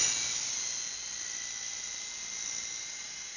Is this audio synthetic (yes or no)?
no